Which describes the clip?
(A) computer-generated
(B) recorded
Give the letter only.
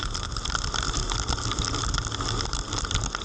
B